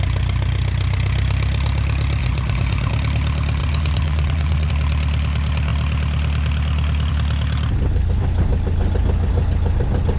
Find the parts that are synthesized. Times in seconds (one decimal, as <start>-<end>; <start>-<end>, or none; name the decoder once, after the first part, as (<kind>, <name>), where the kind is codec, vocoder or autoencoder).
2.2-2.9 (vocoder, Vocos); 3.6-4.7